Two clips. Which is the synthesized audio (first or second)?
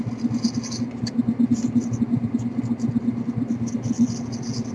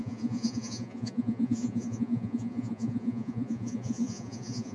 second